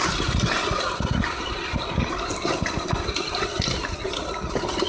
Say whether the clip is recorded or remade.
recorded